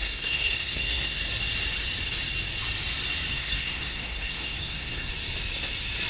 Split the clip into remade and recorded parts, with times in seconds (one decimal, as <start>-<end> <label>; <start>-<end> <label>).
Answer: 0.0-1.2 remade; 1.2-3.3 recorded; 3.3-5.1 remade; 5.1-6.1 recorded